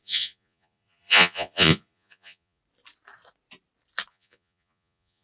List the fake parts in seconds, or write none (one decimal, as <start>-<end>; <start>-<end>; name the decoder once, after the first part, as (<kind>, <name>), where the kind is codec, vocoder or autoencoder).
0.0-2.6 (vocoder, Vocos); 4.1-5.2